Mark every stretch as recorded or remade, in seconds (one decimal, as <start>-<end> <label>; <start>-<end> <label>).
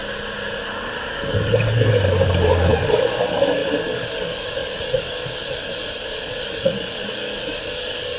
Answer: 0.0-0.6 recorded; 0.6-8.2 remade